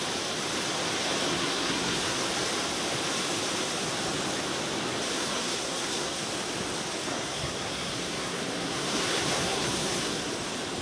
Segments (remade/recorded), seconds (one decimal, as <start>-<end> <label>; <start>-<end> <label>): 0.0-1.3 recorded; 1.3-2.2 remade; 2.2-5.1 recorded; 5.1-6.2 remade; 6.2-7.1 recorded; 7.1-10.3 remade; 10.3-10.8 recorded